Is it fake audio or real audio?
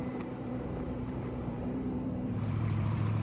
fake